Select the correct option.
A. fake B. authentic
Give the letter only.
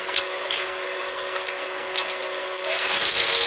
A